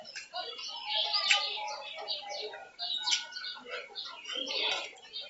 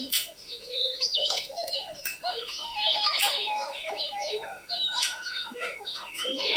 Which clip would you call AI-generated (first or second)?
second